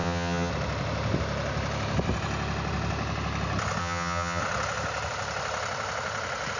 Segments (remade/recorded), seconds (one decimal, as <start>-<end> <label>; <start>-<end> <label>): 0.0-0.5 remade; 0.5-3.8 recorded; 3.8-4.4 remade; 4.4-6.6 recorded